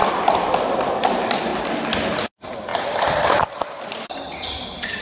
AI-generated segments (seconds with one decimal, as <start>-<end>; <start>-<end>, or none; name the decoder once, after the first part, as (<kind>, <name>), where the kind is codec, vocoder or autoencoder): 0.0-0.9 (vocoder, BigVGAN v2); 2.7-4.3